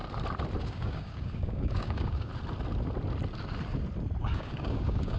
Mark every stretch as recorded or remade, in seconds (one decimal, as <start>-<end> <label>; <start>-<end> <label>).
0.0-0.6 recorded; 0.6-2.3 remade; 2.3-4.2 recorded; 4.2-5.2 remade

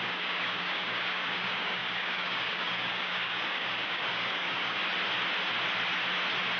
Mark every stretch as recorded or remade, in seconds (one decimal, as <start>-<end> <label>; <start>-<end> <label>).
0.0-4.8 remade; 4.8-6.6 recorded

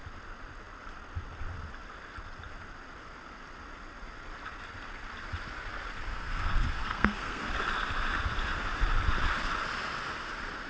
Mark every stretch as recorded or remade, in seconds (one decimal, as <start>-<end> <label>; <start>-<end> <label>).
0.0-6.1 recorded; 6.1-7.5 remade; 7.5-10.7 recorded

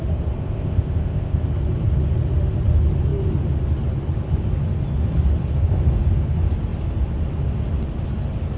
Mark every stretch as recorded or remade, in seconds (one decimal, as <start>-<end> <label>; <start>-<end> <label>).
0.0-0.4 recorded; 0.4-1.5 remade; 1.5-8.6 recorded

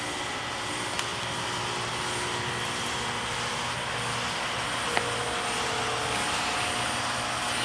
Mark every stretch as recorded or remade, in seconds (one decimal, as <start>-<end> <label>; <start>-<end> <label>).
0.0-7.6 recorded

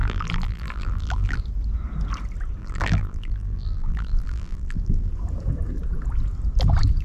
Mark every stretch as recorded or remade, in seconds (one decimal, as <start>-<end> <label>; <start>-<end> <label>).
0.0-1.4 remade; 1.4-2.6 recorded; 2.6-5.1 remade; 5.1-7.0 recorded

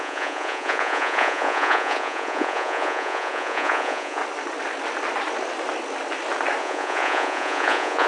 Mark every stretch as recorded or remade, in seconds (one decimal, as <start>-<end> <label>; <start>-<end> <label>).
0.0-4.2 remade; 4.2-6.6 recorded; 6.6-8.1 remade

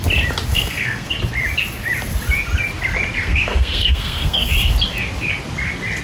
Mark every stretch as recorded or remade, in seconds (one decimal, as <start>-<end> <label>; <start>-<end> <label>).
0.0-0.5 recorded; 0.5-1.1 remade; 1.1-3.2 recorded; 3.2-4.5 remade; 4.5-6.0 recorded